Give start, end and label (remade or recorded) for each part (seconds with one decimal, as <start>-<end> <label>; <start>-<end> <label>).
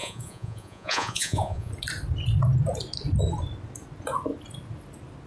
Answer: 0.0-1.7 remade; 1.7-5.3 recorded